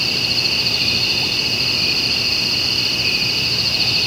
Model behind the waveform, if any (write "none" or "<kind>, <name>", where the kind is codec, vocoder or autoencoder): none